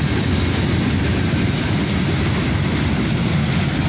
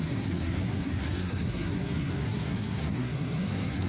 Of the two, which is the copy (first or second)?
second